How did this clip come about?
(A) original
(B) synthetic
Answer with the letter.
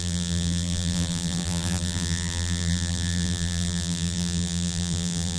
B